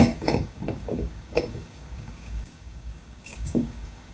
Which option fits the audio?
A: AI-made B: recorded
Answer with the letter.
A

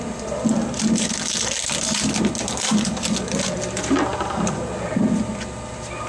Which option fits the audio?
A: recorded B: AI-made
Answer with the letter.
A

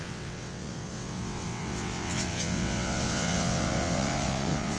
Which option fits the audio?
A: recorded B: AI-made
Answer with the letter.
B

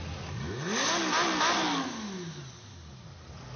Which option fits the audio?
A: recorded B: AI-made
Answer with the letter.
A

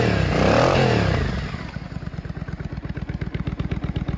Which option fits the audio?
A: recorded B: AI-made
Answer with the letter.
A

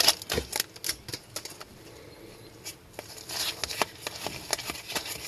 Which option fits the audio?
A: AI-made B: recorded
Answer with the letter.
B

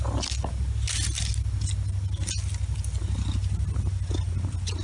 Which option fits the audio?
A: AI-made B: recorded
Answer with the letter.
B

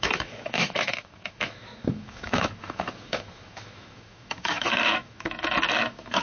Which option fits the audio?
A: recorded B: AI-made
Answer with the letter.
B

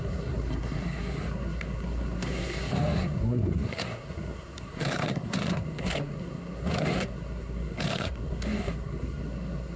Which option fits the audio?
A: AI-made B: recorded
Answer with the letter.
A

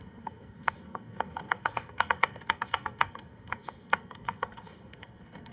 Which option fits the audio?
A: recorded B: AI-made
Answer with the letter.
B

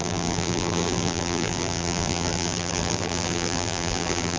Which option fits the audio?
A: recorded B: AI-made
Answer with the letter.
B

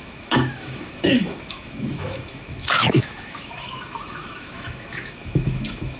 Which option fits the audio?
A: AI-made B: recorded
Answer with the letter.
A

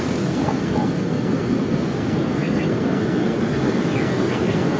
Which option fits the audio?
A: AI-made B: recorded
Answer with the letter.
A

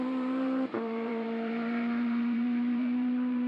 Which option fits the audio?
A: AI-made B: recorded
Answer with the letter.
A